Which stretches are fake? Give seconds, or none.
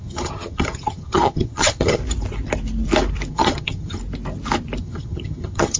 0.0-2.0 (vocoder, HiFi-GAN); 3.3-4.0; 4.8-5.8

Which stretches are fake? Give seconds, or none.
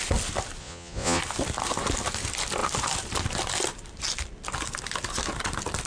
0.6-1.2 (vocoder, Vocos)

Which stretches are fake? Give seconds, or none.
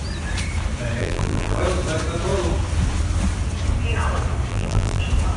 1.0-1.6 (vocoder, BigVGAN v2); 4.5-5.0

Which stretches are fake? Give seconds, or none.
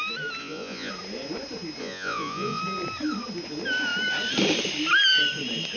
0.4-0.9 (vocoder, Vocos); 1.8-2.6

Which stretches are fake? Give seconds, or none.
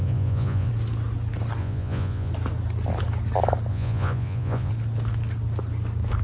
0.0-0.7 (vocoder, Vocos); 1.6-2.3; 3.7-4.7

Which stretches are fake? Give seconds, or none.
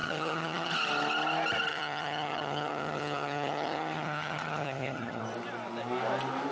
0.0-0.7 (vocoder, HiFi-GAN); 1.7-5.2